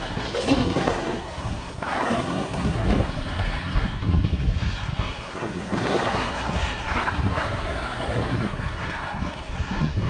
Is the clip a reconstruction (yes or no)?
yes